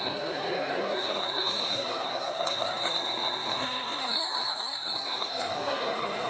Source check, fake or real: fake